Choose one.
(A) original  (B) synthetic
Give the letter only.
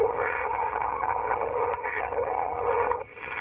B